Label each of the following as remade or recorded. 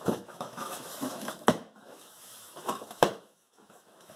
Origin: remade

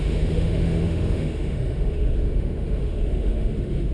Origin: remade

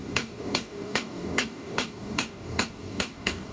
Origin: remade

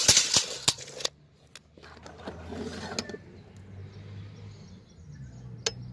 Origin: recorded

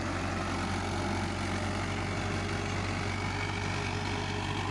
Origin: remade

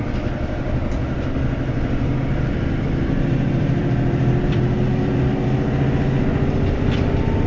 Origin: remade